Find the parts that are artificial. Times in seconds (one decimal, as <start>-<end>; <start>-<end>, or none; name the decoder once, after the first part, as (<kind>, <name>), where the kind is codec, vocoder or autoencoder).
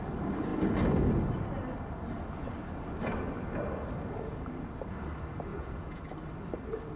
5.5-6.0 (vocoder, Vocos)